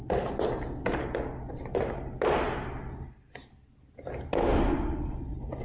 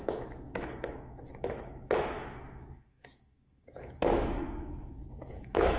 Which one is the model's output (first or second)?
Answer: second